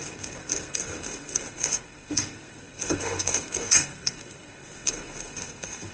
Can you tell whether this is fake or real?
fake